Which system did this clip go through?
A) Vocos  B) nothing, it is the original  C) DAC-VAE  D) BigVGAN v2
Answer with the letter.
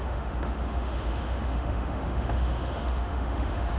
C